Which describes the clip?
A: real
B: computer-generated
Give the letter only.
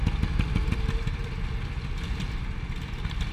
A